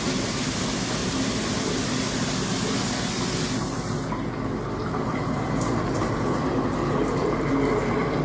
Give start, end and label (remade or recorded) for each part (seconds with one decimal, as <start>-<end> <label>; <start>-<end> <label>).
0.0-1.0 recorded; 1.0-2.3 remade; 2.3-4.8 recorded; 4.8-7.7 remade; 7.7-8.2 recorded